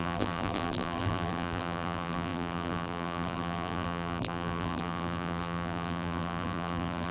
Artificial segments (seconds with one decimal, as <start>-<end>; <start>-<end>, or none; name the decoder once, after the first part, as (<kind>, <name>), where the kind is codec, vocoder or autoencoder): 0.0-7.1 (vocoder, BigVGAN v2)

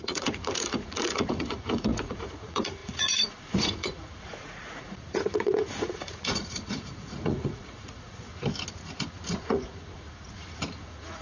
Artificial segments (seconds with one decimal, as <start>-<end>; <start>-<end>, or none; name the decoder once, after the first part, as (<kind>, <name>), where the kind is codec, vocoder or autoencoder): 0.0-8.3 (vocoder, Vocos); 9.3-11.2

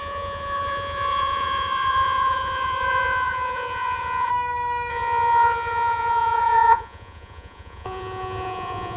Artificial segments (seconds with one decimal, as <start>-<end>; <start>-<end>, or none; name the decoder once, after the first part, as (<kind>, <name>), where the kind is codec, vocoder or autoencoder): 0.0-4.3 (vocoder, Vocos); 4.9-9.0

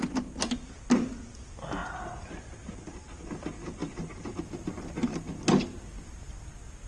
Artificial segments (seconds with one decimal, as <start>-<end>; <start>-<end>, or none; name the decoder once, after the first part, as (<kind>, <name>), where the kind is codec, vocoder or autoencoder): none

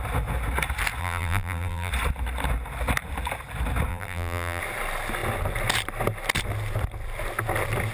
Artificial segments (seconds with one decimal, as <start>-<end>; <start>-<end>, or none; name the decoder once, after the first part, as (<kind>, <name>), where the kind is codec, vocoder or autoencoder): 1.0-1.9 (vocoder, BigVGAN v2); 3.9-4.6

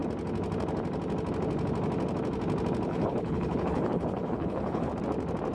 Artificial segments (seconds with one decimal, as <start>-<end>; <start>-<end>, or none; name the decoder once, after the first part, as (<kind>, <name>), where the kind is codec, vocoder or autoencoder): 2.9-4.9 (codec, HILCodec)

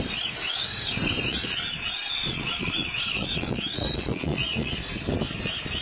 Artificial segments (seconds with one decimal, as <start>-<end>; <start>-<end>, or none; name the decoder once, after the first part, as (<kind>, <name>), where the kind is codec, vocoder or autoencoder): 1.3-4.8 (vocoder, Vocos)

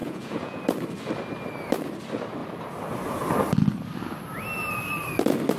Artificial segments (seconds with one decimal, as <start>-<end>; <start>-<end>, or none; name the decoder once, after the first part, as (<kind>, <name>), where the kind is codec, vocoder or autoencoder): 0.0-0.6 (vocoder, Vocos)